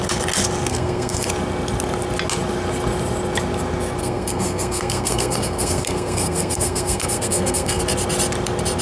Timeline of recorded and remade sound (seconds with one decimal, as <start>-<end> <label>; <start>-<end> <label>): 0.0-0.7 recorded; 0.7-1.3 remade; 1.3-4.0 recorded; 4.0-7.8 remade; 7.8-8.8 recorded